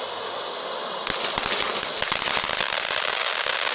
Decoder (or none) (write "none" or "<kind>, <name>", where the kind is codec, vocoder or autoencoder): none